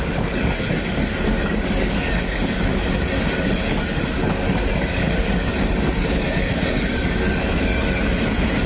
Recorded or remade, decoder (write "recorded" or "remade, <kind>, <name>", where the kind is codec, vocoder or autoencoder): remade, codec, DAC